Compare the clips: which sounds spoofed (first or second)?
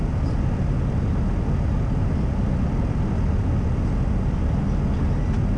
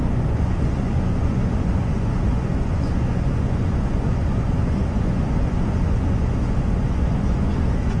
second